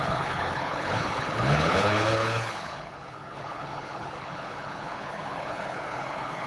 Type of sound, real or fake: fake